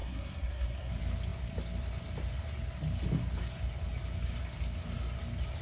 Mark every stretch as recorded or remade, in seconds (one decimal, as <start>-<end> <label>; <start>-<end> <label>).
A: 0.0-0.9 remade; 0.9-5.6 recorded